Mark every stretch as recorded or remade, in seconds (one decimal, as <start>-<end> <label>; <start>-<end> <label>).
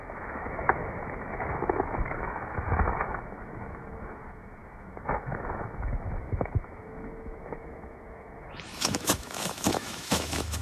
0.0-10.6 remade